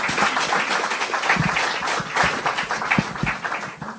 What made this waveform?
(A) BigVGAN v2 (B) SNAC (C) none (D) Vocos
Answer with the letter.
C